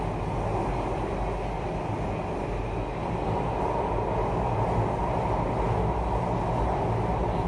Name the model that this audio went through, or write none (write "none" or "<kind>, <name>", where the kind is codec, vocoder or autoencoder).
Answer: none